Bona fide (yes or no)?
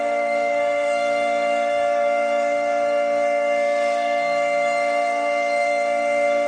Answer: no